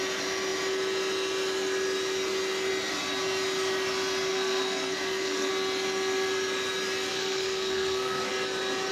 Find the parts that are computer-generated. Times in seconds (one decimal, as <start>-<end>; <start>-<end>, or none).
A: 4.3-5.5; 7.1-8.3